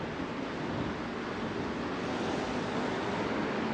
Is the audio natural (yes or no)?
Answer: yes